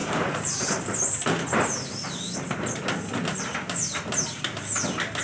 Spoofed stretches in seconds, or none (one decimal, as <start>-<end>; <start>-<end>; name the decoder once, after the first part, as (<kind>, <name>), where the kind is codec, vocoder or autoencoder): 0.0-1.0 (vocoder, BigVGAN v2)